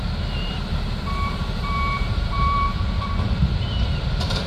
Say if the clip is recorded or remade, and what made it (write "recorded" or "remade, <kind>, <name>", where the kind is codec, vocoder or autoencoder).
remade, vocoder, BigVGAN v2